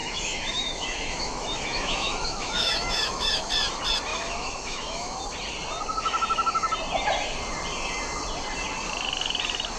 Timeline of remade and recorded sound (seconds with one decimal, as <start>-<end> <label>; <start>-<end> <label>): 0.0-3.5 remade; 3.5-4.1 recorded; 4.1-5.2 remade; 5.2-9.8 recorded